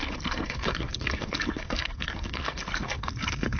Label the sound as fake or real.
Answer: fake